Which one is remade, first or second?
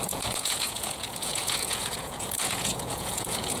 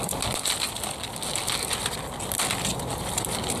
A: first